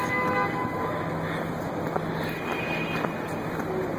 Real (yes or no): yes